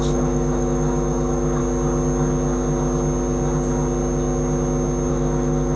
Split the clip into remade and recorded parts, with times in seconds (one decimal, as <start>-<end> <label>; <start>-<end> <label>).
0.0-1.6 remade; 1.6-5.1 recorded; 5.1-5.8 remade